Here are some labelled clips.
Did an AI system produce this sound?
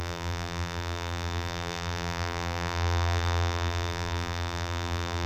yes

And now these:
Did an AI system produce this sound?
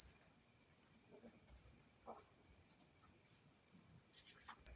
no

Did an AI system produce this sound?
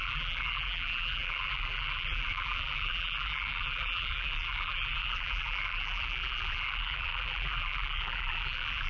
yes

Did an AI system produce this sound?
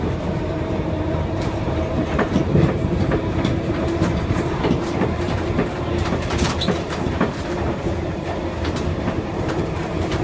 yes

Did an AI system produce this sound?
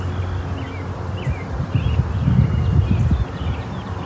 no